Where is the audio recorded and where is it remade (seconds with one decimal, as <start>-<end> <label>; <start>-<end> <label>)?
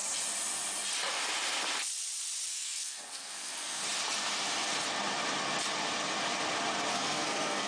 0.0-2.5 recorded; 2.5-3.8 remade; 3.8-6.9 recorded; 6.9-7.7 remade